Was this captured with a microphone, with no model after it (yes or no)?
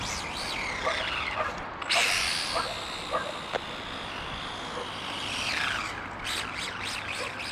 yes